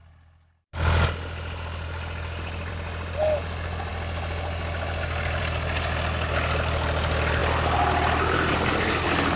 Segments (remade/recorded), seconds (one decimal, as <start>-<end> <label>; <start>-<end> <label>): 0.0-9.4 recorded